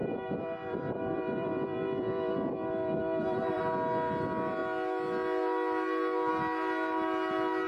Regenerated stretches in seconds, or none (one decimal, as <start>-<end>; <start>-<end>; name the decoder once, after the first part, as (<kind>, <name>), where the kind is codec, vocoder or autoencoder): 0.0-3.6 (vocoder, BigVGAN v2)